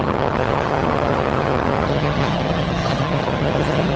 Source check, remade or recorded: remade